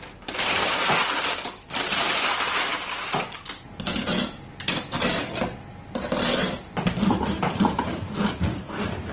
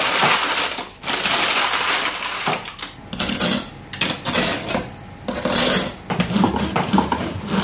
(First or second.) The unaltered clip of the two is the first